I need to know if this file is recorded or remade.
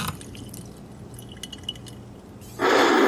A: recorded